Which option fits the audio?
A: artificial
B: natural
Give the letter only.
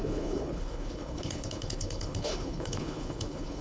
A